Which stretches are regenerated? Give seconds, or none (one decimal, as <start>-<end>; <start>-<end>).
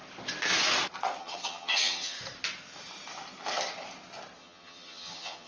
1.2-2.2; 4.4-5.5